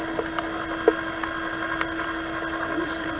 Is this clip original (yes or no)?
yes